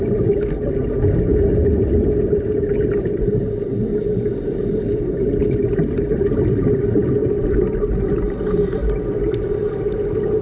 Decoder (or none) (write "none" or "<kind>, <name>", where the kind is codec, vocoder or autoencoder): none